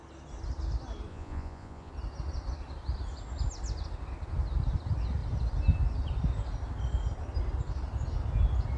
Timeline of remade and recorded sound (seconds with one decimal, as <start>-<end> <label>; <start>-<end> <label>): 0.0-1.1 recorded; 1.1-1.9 remade; 1.9-8.8 recorded